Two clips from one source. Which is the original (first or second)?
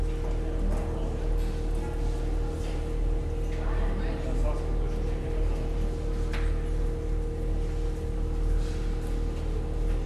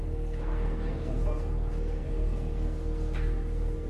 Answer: first